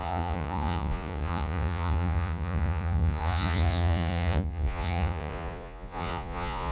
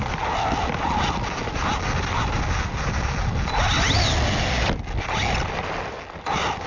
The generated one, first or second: first